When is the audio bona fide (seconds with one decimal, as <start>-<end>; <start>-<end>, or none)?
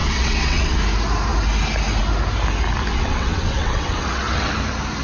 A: 0.8-2.9; 4.5-5.0